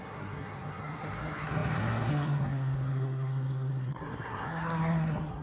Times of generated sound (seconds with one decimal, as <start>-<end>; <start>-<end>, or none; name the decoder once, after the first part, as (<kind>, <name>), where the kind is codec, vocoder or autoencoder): 0.0-5.4 (codec, SNAC)